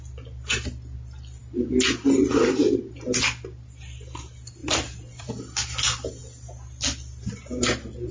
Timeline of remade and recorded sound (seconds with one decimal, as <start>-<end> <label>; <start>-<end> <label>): 0.0-4.6 recorded; 4.6-5.3 remade; 5.3-8.1 recorded